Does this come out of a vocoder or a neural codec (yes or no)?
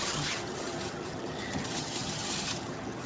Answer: yes